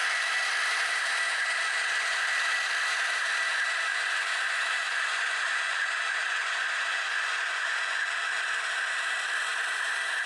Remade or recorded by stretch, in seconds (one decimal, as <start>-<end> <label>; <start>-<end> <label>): 0.0-3.9 recorded; 3.9-8.2 remade; 8.2-10.3 recorded